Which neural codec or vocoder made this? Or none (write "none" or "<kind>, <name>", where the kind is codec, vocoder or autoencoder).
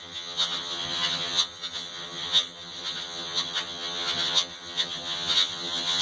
vocoder, HiFi-GAN